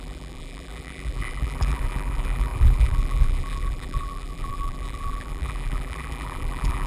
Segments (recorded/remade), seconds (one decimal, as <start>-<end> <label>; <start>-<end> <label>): 0.0-6.9 remade